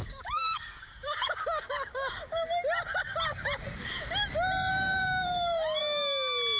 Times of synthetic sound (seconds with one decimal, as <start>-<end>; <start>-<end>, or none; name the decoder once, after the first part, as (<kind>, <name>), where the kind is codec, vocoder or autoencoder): 0.0-2.5 (codec, DAC); 4.7-5.8